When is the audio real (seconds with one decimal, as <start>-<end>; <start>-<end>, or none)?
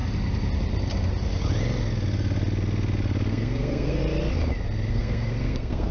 0.0-3.3; 4.0-4.9